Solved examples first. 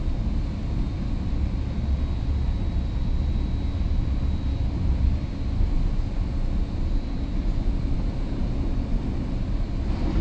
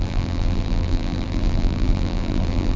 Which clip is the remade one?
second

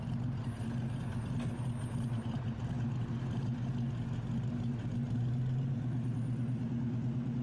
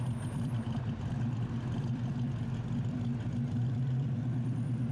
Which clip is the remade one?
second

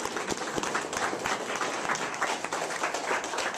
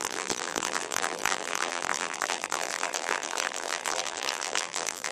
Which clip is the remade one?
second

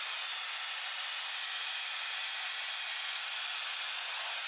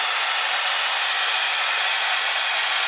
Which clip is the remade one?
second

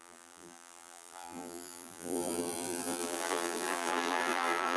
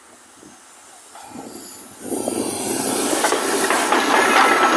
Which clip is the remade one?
first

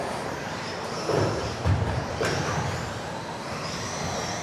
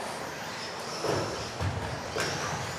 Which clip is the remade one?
first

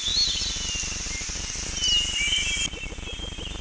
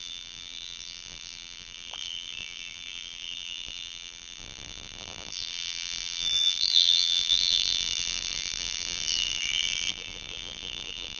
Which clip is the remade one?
second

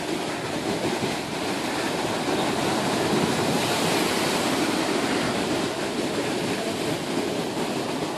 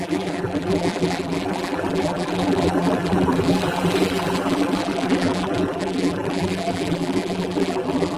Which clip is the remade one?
second